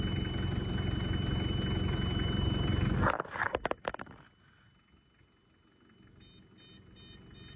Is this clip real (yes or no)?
yes